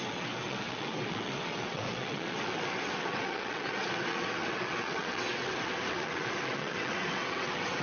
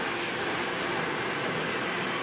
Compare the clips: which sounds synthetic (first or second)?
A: first